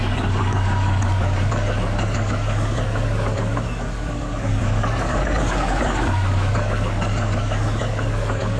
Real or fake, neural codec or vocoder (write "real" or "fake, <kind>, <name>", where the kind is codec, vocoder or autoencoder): fake, codec, DAC